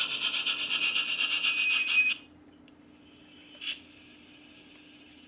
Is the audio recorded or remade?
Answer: recorded